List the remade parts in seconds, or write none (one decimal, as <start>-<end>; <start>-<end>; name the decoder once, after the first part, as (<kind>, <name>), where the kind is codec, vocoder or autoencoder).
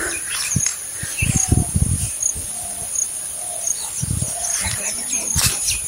0.0-0.7 (vocoder, BigVGAN v2); 3.6-5.9